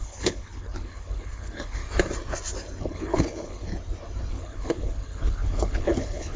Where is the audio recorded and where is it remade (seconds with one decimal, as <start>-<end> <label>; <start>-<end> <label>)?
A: 0.0-1.8 remade; 1.8-2.8 recorded; 2.8-3.7 remade; 3.7-4.3 recorded; 4.3-6.4 remade